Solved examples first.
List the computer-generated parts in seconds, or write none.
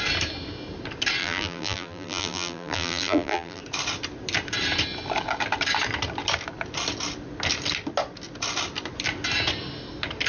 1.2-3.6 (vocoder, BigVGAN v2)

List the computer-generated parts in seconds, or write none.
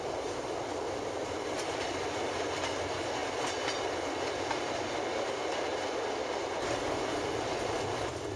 none